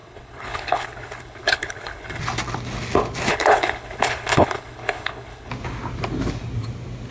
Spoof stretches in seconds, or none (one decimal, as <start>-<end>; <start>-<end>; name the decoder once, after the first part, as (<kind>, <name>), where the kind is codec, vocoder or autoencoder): 0.0-2.2 (codec, HILCodec); 3.3-5.5